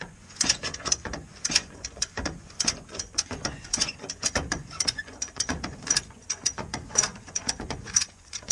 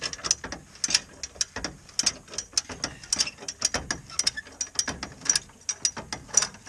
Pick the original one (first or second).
second